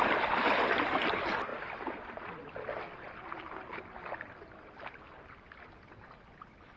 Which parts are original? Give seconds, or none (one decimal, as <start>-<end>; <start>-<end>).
0.0-6.8